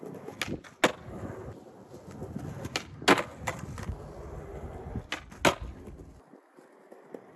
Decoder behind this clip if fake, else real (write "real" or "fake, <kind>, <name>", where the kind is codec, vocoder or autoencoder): real